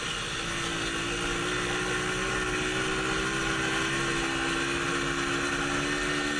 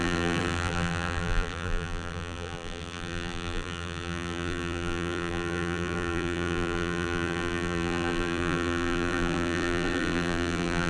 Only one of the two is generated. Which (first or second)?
second